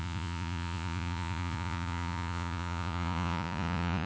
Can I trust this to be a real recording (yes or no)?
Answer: no